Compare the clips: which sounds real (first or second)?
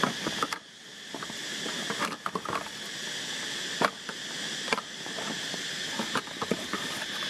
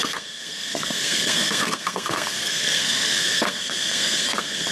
first